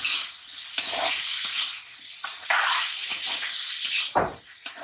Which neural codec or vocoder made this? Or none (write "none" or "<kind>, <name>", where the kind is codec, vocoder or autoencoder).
none